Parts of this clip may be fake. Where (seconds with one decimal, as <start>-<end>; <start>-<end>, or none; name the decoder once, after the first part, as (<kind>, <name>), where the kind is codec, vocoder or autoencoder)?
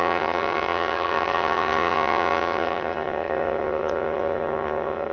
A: 0.0-5.1 (vocoder, HiFi-GAN)